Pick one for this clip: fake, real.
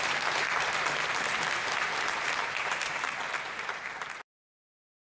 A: fake